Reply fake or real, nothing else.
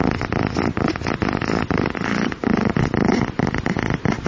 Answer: real